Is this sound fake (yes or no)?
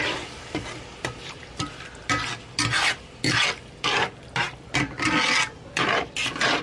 no